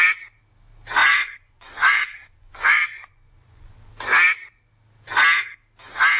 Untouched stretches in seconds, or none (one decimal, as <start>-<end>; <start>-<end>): 0.0-1.0; 3.9-6.2